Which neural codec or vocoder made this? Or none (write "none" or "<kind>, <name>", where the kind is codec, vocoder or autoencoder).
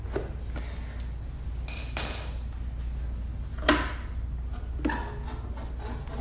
none